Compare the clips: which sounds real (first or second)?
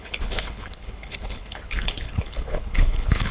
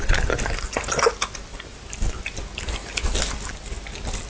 second